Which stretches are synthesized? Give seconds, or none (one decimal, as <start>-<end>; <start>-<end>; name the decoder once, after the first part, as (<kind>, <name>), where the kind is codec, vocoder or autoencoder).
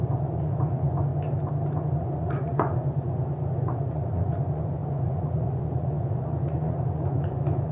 0.0-1.1 (vocoder, Vocos); 1.7-7.7